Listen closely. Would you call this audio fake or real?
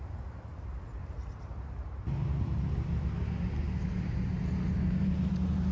real